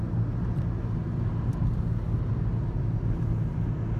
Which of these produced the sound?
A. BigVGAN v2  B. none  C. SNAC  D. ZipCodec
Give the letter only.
B